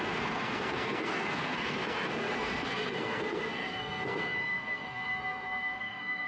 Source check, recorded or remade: remade